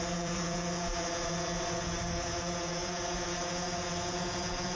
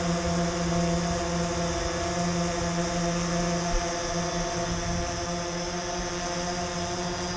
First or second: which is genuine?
second